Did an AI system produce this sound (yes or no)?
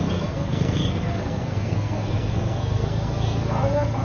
yes